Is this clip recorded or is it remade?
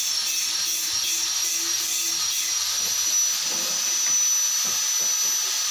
recorded